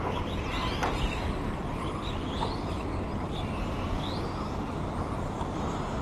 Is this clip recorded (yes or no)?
yes